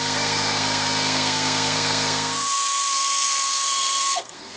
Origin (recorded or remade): remade